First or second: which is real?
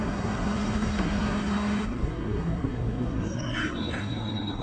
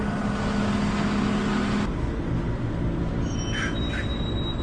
second